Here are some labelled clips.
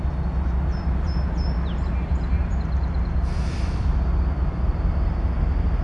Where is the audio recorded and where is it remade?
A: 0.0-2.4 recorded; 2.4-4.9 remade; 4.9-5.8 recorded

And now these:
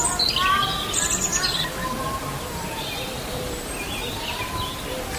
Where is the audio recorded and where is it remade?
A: 0.0-1.3 recorded; 1.3-4.4 remade; 4.4-5.2 recorded